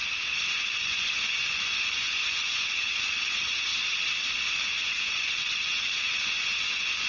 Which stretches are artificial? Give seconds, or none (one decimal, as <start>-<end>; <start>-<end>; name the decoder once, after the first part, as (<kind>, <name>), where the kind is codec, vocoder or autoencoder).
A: 0.5-3.7 (vocoder, Vocos); 4.8-7.1